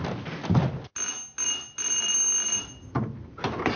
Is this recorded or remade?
recorded